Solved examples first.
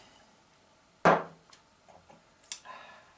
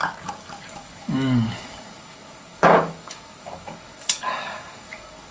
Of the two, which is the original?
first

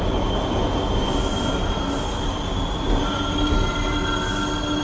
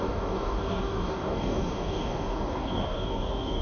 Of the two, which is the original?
first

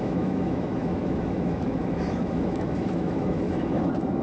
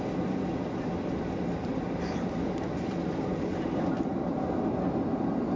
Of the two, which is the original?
second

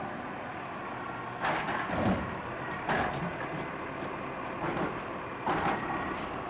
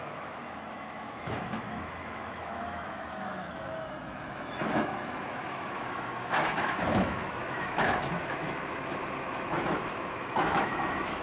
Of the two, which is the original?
first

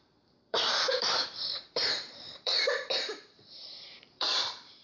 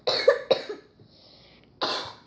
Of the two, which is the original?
second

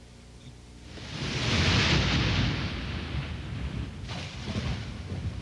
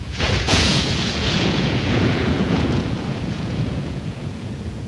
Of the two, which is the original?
first